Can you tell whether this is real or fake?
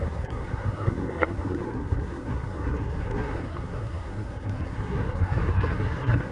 fake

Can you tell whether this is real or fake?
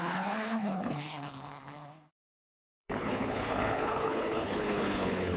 fake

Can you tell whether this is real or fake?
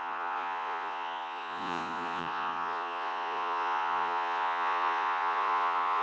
fake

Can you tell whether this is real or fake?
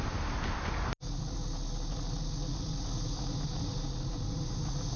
real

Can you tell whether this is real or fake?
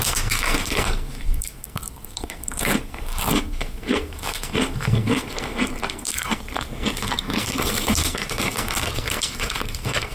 fake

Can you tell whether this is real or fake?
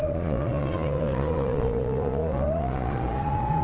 fake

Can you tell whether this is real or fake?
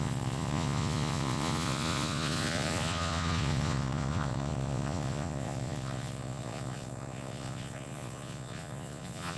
fake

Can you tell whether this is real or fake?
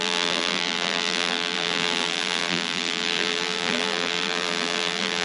fake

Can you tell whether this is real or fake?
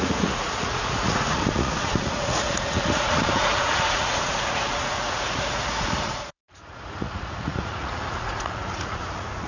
fake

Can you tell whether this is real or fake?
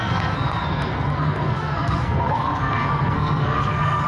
fake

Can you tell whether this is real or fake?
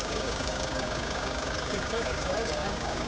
fake